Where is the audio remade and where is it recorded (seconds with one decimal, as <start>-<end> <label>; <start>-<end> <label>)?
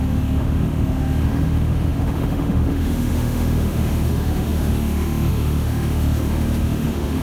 0.0-7.2 remade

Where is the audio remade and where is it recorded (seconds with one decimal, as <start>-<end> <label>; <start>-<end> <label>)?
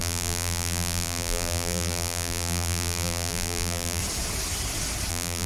0.0-4.0 remade; 4.0-5.1 recorded; 5.1-5.5 remade